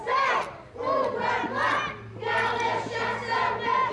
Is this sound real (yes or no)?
yes